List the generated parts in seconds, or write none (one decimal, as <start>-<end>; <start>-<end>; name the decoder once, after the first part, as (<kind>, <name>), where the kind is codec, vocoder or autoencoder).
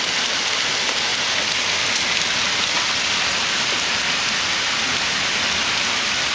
none